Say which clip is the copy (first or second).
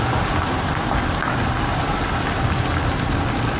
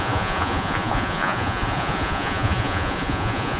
second